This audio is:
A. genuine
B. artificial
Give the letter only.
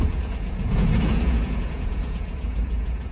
B